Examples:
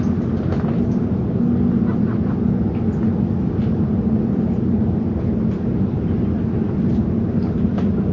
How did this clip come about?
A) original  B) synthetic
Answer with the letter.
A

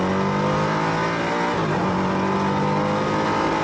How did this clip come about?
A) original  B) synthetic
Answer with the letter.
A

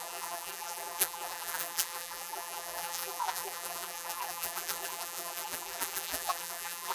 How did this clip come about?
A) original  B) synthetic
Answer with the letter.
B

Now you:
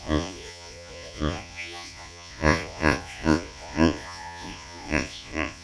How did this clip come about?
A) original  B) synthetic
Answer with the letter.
B